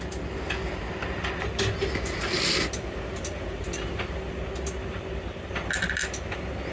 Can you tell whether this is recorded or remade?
recorded